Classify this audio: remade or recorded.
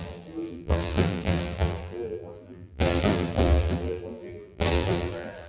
remade